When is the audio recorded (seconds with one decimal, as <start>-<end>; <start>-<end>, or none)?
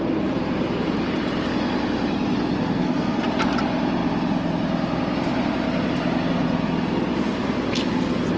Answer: 0.0-2.6; 3.2-8.4